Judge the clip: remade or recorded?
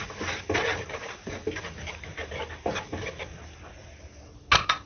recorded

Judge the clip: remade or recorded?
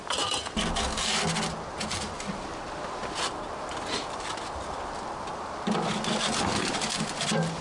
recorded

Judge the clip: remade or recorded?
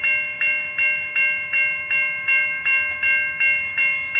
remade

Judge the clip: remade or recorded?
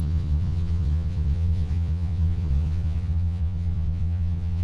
remade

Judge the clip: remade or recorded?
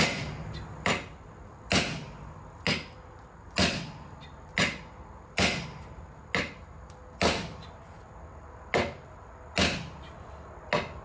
recorded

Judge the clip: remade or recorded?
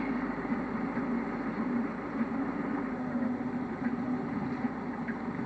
recorded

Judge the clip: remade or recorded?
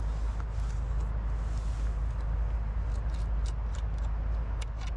recorded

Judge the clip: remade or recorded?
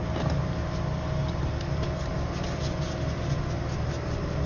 recorded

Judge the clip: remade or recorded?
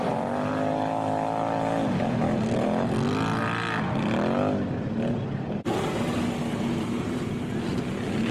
recorded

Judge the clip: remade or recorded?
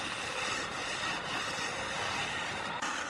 recorded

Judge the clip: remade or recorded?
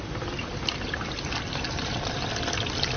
recorded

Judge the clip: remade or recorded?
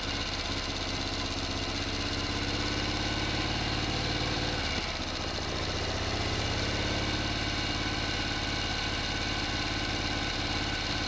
recorded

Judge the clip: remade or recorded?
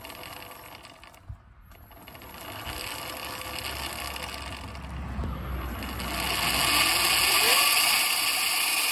recorded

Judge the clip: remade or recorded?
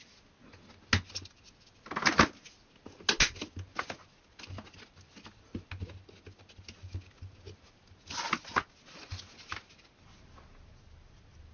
recorded